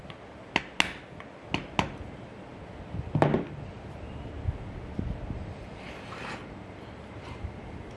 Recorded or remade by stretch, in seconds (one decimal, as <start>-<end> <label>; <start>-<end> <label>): 0.0-8.0 recorded

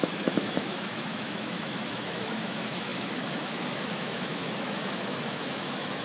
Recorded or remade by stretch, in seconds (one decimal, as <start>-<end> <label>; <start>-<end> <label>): 0.0-6.0 remade

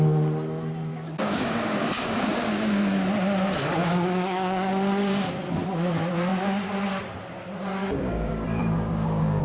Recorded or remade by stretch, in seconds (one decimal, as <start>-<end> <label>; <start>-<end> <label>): 0.0-0.9 recorded; 0.9-2.8 remade; 2.8-3.8 recorded; 3.8-4.7 remade; 4.7-7.8 recorded; 7.8-9.4 remade

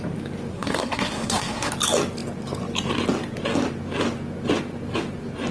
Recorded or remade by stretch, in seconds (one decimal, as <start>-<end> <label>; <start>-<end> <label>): 0.0-0.5 recorded; 0.5-1.7 remade; 1.7-5.5 recorded

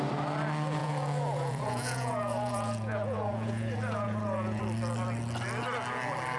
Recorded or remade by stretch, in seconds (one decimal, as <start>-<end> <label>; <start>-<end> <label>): 0.0-0.8 recorded; 0.8-4.6 remade; 4.6-6.4 recorded

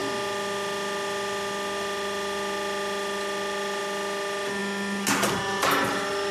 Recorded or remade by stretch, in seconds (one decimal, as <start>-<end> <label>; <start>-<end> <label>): 0.0-6.3 recorded

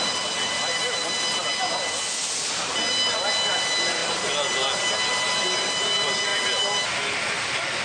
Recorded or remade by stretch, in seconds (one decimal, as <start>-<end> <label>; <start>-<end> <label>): 0.0-7.8 recorded

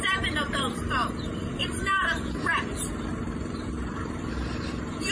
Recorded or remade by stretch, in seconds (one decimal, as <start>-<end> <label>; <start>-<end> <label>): 0.0-5.1 remade